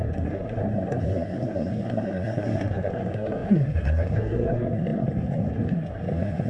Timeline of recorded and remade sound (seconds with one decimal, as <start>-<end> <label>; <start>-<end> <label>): 0.0-6.5 remade

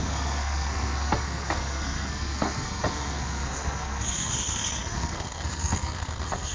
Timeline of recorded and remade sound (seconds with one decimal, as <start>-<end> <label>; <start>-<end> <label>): 0.0-6.5 remade

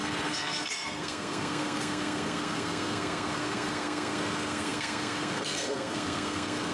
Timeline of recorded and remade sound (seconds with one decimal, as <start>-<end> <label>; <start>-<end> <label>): 0.0-6.7 remade

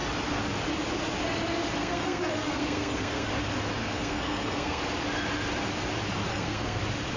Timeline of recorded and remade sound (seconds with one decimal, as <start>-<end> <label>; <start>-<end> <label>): 0.0-1.8 recorded; 1.8-3.3 remade; 3.3-3.8 recorded; 3.8-4.8 remade; 4.8-6.3 recorded; 6.3-6.8 remade; 6.8-7.2 recorded